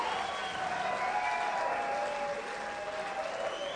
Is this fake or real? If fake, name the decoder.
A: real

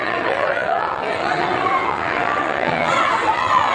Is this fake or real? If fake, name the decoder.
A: fake, vocoder, WaveNeXt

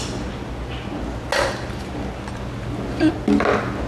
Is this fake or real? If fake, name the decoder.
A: real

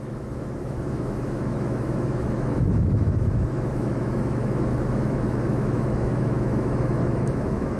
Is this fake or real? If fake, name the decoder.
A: fake, autoencoder, DAC-VAE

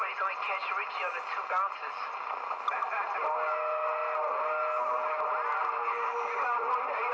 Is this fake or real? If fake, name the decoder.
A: real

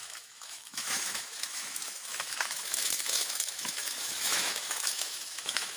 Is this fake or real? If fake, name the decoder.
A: fake, autoencoder, DAC-VAE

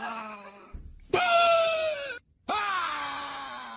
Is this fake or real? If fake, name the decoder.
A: real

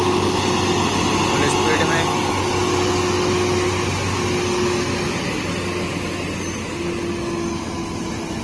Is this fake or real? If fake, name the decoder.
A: real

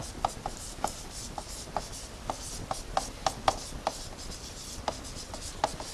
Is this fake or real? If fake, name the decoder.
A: real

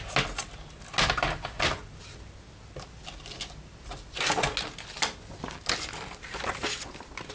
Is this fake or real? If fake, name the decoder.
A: real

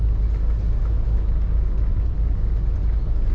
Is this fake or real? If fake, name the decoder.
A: real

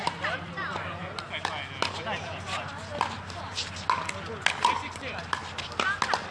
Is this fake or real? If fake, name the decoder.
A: real